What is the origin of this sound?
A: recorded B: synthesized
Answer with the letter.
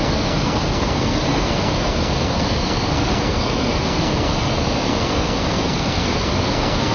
B